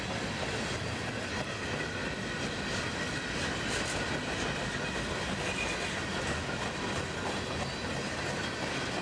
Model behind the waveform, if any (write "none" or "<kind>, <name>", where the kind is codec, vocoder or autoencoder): none